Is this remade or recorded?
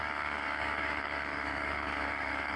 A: remade